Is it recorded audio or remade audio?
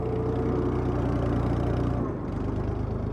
recorded